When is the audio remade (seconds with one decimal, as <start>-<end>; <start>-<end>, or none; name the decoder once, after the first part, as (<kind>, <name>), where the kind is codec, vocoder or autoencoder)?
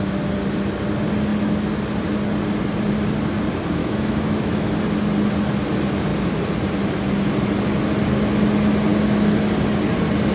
3.8-4.8 (autoencoder, DAC-VAE)